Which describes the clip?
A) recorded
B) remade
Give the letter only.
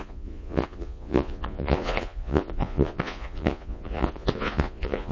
B